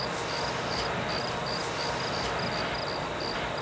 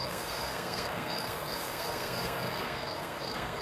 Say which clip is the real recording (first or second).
first